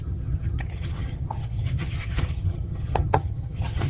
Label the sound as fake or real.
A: fake